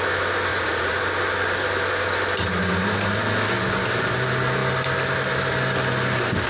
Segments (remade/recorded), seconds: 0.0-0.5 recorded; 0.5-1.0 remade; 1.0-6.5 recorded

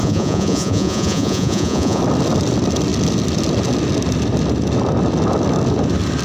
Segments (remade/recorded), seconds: 0.0-2.0 remade; 2.0-6.2 recorded

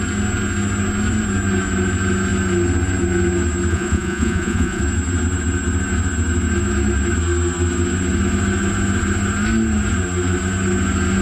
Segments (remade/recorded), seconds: 0.0-3.7 recorded; 3.7-4.8 remade; 4.8-11.2 recorded

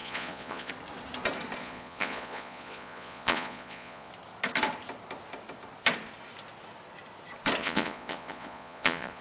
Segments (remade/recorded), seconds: 0.0-0.7 remade; 0.7-1.6 recorded; 1.6-4.1 remade; 4.1-7.6 recorded; 7.6-9.2 remade

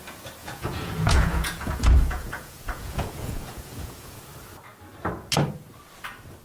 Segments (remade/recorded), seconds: 0.0-0.4 recorded; 0.4-4.2 remade; 4.2-6.4 recorded

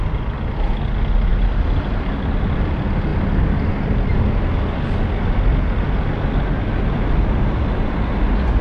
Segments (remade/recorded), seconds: 0.0-8.6 recorded

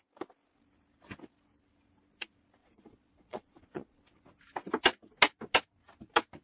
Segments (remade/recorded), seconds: 0.0-2.6 recorded; 2.6-4.0 remade; 4.0-6.4 recorded